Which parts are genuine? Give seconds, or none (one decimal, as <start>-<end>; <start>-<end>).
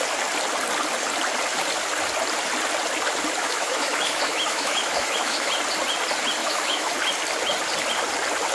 0.0-3.4; 5.5-6.4; 6.9-8.5